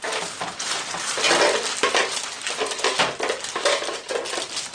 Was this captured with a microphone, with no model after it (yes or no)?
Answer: yes